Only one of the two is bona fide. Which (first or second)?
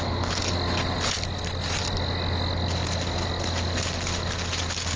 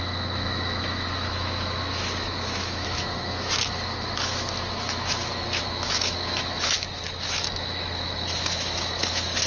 first